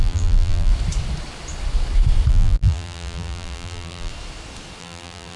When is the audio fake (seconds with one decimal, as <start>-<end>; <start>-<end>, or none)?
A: 0.0-0.7; 2.3-4.1; 4.8-5.4